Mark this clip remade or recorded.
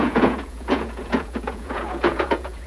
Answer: remade